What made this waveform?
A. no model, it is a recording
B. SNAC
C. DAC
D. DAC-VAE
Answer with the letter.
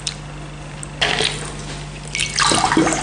A